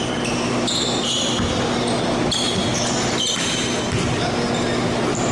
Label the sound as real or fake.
real